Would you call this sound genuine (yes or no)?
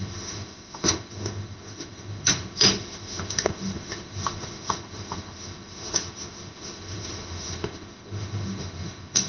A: no